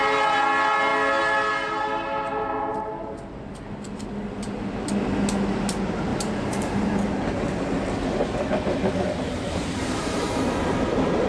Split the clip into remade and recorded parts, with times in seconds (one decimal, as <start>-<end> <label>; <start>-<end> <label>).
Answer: 0.0-6.1 recorded; 6.1-6.9 remade; 6.9-9.3 recorded; 9.3-10.7 remade; 10.7-11.3 recorded